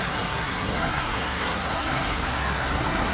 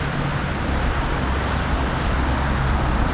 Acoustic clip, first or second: second